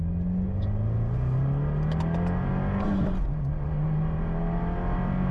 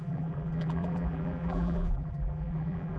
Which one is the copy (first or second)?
second